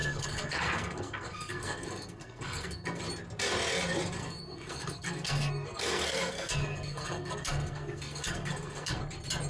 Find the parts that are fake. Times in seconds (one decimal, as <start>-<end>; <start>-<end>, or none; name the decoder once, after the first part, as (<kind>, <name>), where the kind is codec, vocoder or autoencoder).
0.0-3.0 (codec, SNAC); 4.2-9.0